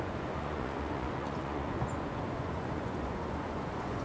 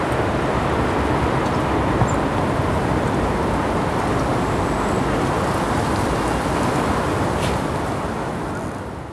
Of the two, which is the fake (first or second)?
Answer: first